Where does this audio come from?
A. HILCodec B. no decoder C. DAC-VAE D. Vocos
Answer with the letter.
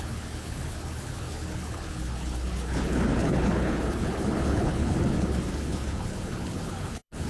A